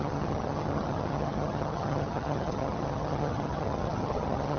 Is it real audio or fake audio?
fake